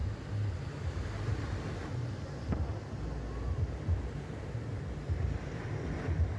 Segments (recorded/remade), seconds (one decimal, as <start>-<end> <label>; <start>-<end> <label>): 0.0-6.4 recorded